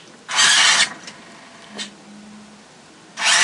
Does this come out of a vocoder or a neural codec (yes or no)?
no